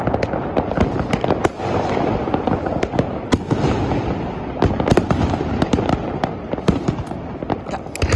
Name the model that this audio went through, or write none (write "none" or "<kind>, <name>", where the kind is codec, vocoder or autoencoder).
none